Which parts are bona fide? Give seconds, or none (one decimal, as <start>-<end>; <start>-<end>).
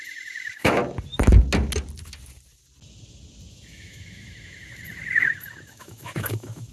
0.8-3.5